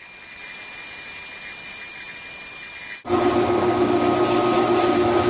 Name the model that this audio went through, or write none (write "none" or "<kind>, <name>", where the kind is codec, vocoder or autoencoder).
none